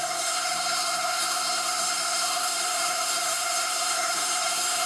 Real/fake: fake